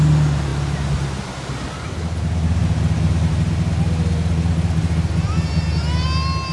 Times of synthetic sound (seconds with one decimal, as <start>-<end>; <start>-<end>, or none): none